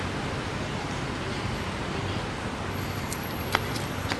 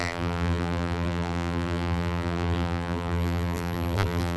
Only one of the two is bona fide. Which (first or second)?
first